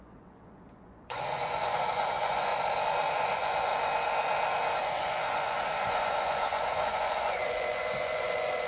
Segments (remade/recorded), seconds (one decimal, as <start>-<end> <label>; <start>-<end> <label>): 0.0-2.5 remade; 2.5-3.1 recorded; 3.1-3.7 remade; 3.7-4.8 recorded; 4.8-8.7 remade